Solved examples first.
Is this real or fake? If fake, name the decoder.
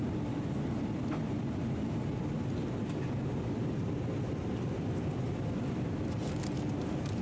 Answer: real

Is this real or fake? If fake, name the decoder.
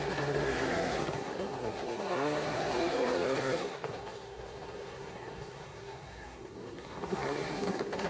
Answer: fake, codec, SNAC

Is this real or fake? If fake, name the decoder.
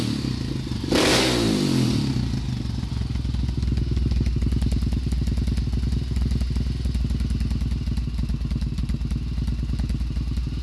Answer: real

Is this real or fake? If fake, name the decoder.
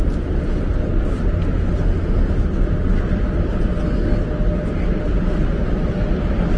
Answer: real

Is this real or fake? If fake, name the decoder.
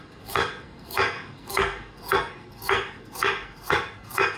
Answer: fake, codec, SNAC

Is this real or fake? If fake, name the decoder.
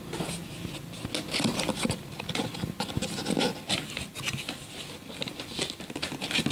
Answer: real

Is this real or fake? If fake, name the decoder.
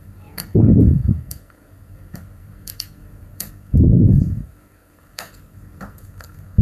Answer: fake, codec, SNAC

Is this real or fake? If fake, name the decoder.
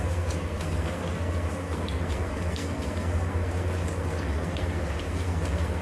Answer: fake, codec, SNAC